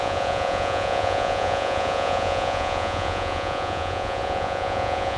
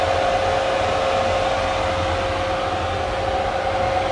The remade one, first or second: first